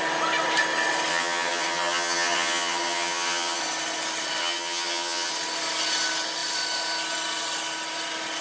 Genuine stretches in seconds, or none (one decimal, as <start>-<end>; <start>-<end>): 0.0-1.1; 3.6-4.4; 5.3-8.4